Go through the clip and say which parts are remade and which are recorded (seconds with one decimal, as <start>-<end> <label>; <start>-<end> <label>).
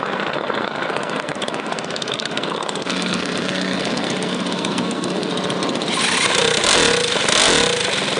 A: 0.0-5.3 remade; 5.3-8.2 recorded